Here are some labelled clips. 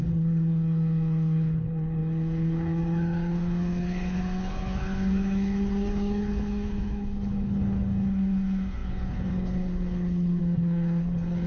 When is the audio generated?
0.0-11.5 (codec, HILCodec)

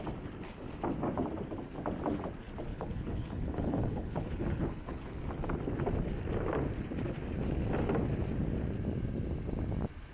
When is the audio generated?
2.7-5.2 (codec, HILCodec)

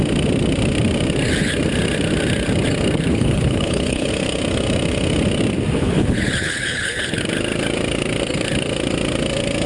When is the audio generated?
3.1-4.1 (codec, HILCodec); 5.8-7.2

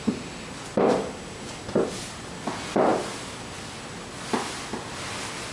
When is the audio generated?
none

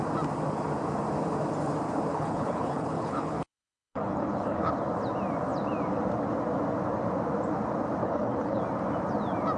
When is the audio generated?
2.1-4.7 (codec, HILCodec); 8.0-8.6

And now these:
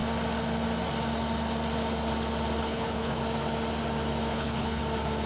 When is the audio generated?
2.6-3.2 (codec, HILCodec); 4.3-4.8

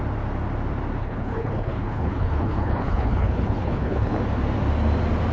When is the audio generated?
1.0-4.2 (codec, HILCodec)